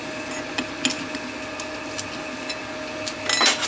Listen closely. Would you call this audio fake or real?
real